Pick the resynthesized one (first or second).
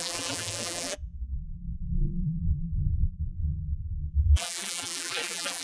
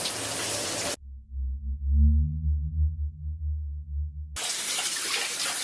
first